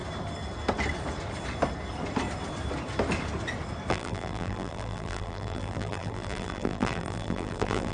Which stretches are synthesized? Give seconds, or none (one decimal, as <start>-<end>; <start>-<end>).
3.9-7.9